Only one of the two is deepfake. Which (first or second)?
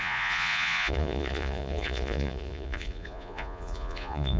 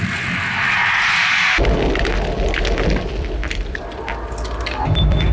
first